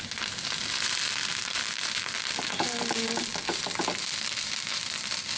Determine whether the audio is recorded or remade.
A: recorded